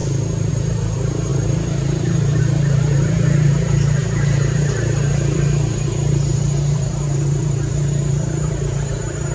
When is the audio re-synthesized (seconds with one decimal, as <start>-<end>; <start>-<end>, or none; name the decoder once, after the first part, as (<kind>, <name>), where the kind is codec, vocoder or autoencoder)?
0.5-9.3 (vocoder, BigVGAN v2)